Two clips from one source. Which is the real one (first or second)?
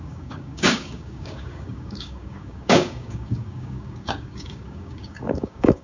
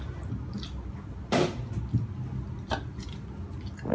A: second